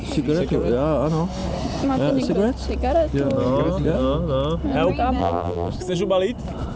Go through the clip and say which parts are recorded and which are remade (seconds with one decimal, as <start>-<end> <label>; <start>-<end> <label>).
0.0-5.2 recorded; 5.2-5.7 remade; 5.7-6.8 recorded